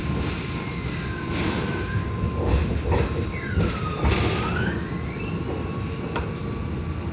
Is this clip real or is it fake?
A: real